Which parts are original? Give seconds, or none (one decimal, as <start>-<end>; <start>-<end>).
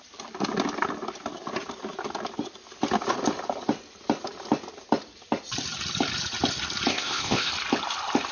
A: 0.0-6.9; 7.5-8.3